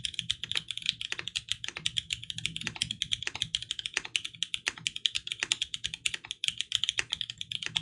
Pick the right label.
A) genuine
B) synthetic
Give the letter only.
A